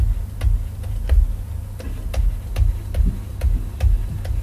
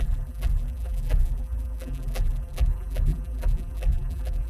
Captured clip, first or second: first